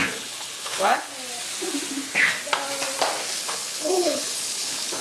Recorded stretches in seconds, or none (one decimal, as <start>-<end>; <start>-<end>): 1.1-3.4